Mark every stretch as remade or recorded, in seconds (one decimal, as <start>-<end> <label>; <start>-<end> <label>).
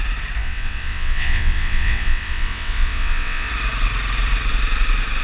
0.0-0.4 recorded; 0.4-3.5 remade; 3.5-5.2 recorded